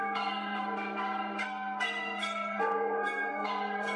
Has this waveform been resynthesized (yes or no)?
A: yes